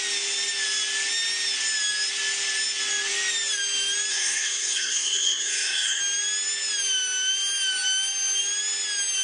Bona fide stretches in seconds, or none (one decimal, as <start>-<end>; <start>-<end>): 0.0-4.1; 6.0-9.2

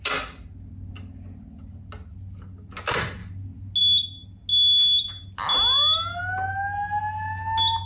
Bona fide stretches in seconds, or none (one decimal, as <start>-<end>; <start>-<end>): 0.0-7.9

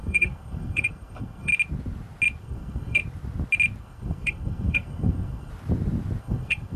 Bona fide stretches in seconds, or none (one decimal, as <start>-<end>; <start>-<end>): 1.5-2.4; 3.0-3.8; 5.5-6.2

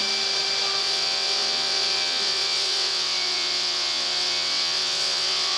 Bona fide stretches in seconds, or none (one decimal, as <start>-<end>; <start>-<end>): 0.0-0.8

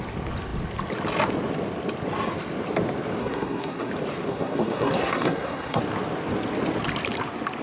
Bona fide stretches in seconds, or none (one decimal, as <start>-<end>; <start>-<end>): 0.0-3.2; 3.9-4.3; 5.8-7.6